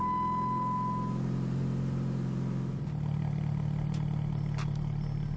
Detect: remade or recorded recorded